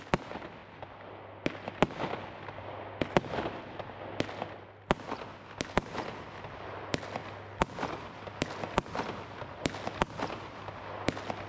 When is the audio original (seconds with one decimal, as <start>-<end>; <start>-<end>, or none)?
0.0-11.5